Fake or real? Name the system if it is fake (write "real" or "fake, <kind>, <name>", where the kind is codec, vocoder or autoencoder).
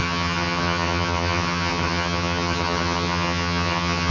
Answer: fake, vocoder, HiFi-GAN